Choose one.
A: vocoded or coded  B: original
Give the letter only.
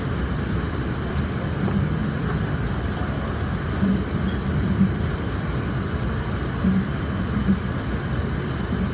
B